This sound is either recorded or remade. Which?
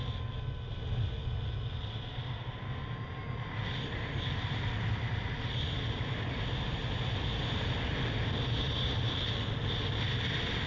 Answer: recorded